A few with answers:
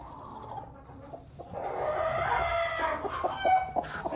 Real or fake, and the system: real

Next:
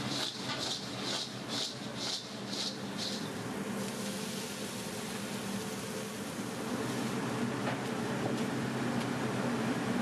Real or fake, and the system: real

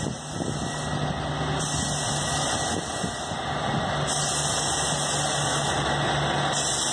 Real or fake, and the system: real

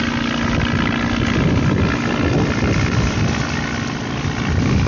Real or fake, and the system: real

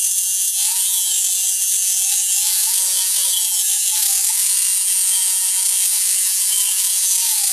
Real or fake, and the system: fake, vocoder, Vocos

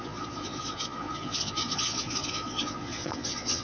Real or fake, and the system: fake, vocoder, Vocos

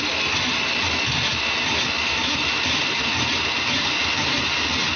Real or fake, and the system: real